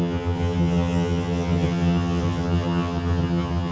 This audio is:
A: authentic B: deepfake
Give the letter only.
B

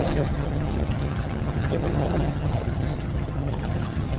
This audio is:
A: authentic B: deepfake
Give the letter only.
B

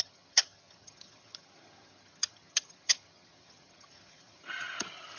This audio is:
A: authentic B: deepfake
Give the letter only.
B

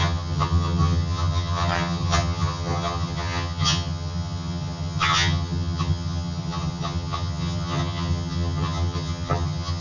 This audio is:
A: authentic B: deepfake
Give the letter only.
B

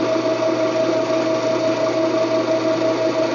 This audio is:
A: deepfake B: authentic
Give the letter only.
B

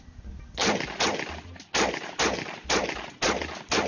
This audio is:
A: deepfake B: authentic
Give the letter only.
B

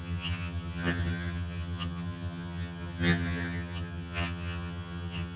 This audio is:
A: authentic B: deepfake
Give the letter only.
B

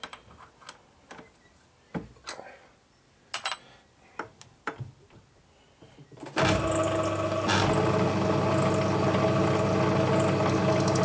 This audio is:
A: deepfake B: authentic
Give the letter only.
B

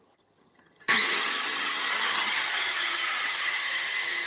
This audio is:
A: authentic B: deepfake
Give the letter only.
B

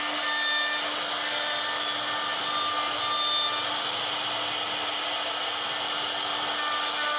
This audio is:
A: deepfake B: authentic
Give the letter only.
B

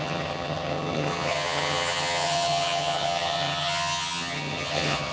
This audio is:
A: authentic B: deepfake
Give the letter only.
B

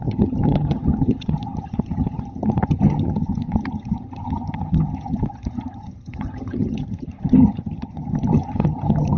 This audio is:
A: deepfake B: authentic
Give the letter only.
A